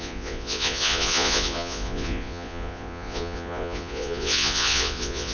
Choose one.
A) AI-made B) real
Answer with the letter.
A